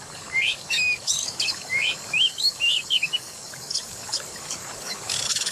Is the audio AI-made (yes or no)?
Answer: yes